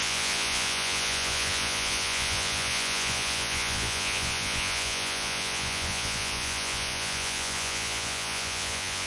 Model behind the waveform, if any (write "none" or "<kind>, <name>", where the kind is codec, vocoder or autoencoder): vocoder, Vocos